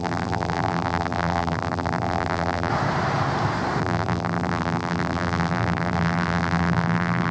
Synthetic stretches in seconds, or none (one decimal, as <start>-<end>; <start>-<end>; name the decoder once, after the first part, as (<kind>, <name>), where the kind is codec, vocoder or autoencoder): 0.0-2.7 (vocoder, BigVGAN v2); 3.8-7.3